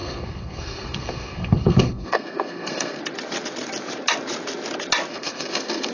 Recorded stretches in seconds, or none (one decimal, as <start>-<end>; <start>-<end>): 3.0-5.1